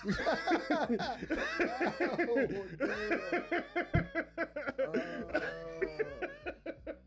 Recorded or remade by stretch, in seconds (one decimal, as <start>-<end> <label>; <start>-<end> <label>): 0.0-5.3 recorded; 5.3-6.0 remade; 6.0-7.1 recorded